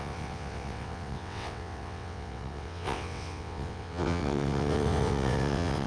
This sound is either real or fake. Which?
fake